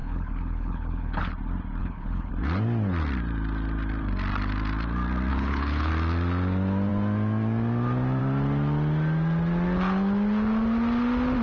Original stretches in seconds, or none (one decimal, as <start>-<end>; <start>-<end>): 1.3-1.8; 2.3-5.3; 5.9-11.4